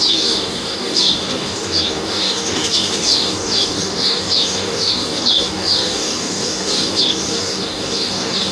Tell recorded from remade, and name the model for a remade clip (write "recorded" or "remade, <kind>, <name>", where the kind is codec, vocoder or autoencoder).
remade, codec, DAC